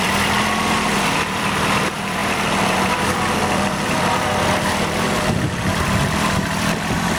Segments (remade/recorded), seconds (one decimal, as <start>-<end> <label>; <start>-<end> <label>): 0.0-7.2 remade